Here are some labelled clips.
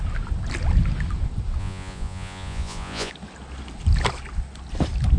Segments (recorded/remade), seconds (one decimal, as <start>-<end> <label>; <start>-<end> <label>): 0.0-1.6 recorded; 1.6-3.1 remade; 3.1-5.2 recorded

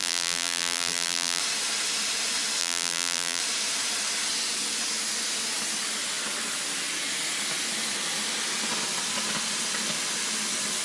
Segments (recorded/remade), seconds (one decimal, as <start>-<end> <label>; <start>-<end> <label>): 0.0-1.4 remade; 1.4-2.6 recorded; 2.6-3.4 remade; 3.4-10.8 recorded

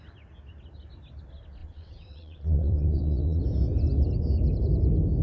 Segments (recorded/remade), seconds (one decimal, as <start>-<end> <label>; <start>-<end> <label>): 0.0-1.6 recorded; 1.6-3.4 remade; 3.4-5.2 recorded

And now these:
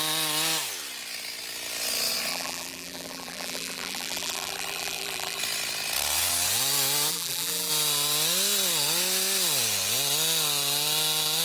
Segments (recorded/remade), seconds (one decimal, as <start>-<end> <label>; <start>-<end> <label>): 0.0-2.3 recorded; 2.3-5.4 remade; 5.4-7.1 recorded; 7.1-7.7 remade; 7.7-11.4 recorded

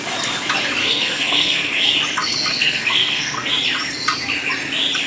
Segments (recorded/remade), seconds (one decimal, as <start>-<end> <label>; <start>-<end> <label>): 0.0-0.8 recorded; 0.8-1.9 remade; 1.9-2.5 recorded; 2.5-3.5 remade; 3.5-5.1 recorded

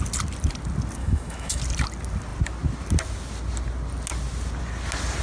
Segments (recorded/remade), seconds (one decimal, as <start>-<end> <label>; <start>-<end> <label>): 0.0-1.0 recorded; 1.0-1.6 remade; 1.6-5.2 recorded

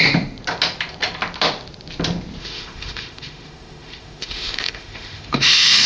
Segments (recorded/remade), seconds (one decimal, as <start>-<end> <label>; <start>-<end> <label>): 0.0-2.4 recorded; 2.4-5.9 remade

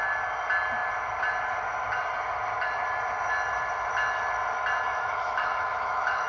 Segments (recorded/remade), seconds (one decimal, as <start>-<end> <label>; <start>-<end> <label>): 0.0-4.9 recorded; 4.9-6.3 remade